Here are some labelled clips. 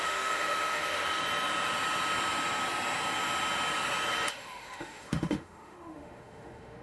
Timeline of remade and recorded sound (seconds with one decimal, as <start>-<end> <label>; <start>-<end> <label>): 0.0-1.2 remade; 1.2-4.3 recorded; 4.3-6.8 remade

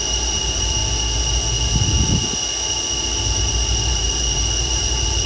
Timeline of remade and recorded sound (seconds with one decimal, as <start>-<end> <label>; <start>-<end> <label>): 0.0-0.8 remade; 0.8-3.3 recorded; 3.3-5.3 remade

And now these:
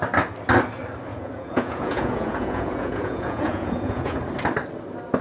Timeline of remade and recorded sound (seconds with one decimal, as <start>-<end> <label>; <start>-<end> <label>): 0.0-1.1 recorded; 1.1-4.2 remade; 4.2-5.2 recorded

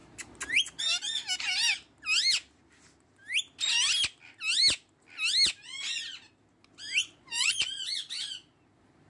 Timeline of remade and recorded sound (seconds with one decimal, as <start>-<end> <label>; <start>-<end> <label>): 0.0-7.0 recorded; 7.0-8.1 remade; 8.1-9.1 recorded

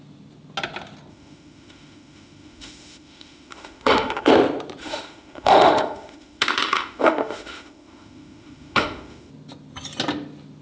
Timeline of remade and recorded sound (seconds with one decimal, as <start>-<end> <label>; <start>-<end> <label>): 0.0-1.1 recorded; 1.1-4.3 remade; 4.3-4.8 recorded; 4.8-9.3 remade; 9.3-10.6 recorded